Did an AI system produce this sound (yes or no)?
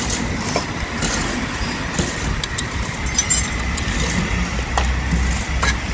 no